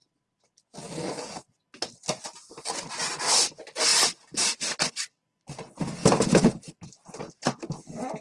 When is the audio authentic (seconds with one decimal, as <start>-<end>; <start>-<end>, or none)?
0.0-3.9; 4.9-8.2